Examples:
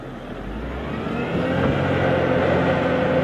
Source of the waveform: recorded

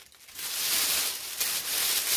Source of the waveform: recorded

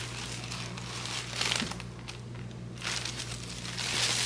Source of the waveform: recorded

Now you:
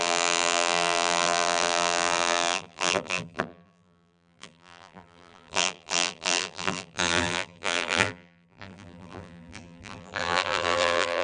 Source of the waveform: remade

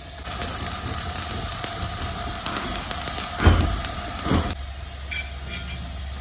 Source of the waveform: recorded